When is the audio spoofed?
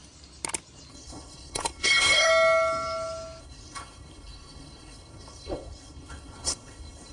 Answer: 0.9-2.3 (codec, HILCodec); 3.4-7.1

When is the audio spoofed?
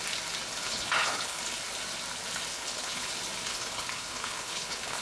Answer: 0.6-1.4 (codec, HILCodec); 2.5-3.1; 3.5-5.0